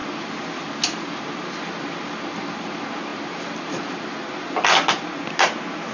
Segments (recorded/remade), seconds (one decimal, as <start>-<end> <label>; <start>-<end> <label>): 0.0-5.9 recorded